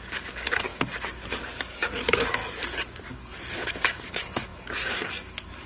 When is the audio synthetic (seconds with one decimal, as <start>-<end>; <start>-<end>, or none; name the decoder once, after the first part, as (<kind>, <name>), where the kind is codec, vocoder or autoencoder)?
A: 0.0-2.4 (codec, DAC); 3.1-5.7